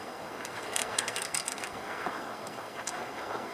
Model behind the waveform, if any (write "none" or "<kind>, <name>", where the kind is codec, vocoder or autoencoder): codec, SNAC